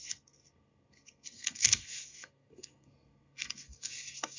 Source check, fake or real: fake